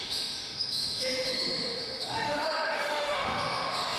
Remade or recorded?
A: remade